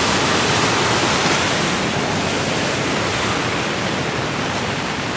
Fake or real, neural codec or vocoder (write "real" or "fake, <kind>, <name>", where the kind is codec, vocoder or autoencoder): real